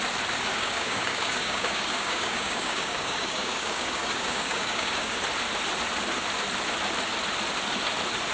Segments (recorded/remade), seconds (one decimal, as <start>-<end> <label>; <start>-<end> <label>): 0.0-0.5 recorded; 0.5-5.2 remade; 5.2-8.3 recorded